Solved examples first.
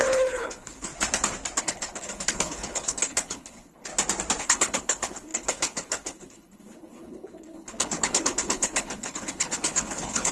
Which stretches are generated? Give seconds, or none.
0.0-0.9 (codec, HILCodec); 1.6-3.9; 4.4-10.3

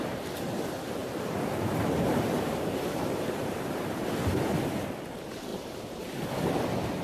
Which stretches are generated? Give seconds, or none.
1.0-4.0 (vocoder, BigVGAN v2); 5.5-6.3

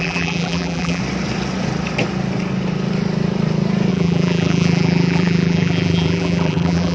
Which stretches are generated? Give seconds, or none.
0.0-1.0 (vocoder, BigVGAN v2); 3.9-6.9

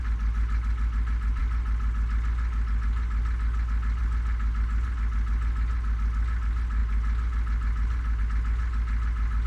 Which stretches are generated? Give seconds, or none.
none

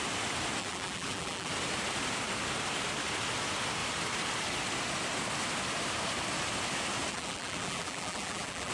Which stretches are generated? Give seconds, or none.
0.6-1.5 (vocoder, BigVGAN v2); 7.1-8.7

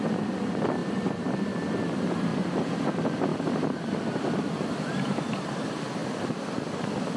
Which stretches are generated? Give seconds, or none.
2.3-2.9 (vocoder, BigVGAN v2)